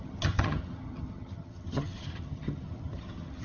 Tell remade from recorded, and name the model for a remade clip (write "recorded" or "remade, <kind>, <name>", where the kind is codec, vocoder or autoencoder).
remade, vocoder, HiFi-GAN